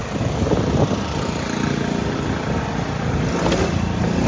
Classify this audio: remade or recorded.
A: recorded